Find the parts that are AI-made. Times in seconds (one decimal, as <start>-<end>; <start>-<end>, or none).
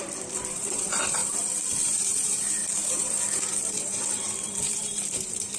0.0-1.2; 1.8-5.6